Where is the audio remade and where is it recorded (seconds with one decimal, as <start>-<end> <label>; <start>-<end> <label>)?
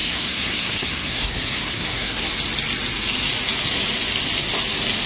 0.0-2.3 remade; 2.3-5.1 recorded